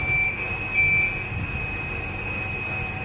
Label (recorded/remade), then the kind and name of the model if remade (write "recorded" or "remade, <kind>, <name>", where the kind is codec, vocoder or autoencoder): recorded